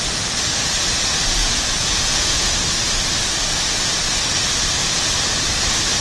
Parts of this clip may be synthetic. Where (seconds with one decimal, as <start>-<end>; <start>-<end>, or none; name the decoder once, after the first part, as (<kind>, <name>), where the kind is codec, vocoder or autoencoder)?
1.4-2.5 (vocoder, Vocos); 4.8-5.5